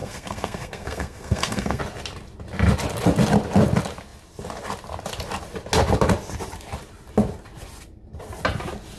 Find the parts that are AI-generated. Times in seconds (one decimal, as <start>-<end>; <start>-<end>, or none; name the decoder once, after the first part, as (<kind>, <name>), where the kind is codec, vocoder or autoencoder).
0.0-1.8 (codec, SNAC)

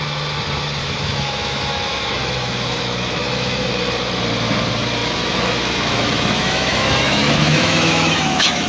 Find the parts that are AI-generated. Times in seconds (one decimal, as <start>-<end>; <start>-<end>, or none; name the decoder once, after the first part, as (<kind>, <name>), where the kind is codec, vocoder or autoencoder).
0.8-3.7 (autoencoder, DAC-VAE); 5.0-8.7

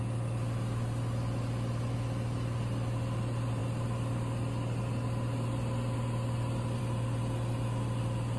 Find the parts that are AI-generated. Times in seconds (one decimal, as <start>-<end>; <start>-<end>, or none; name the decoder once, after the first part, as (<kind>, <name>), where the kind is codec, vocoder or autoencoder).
none